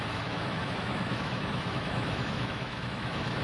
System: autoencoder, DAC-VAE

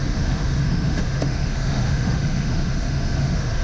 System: autoencoder, DAC-VAE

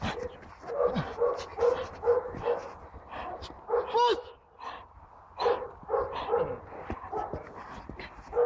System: none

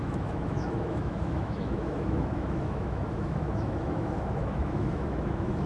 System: autoencoder, DAC-VAE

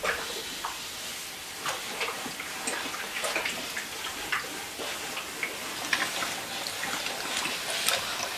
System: none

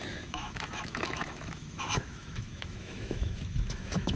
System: autoencoder, DAC-VAE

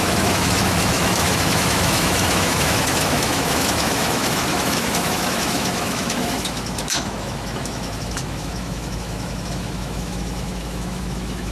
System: autoencoder, DAC-VAE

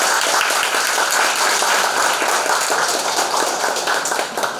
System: none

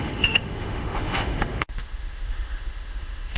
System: autoencoder, DAC-VAE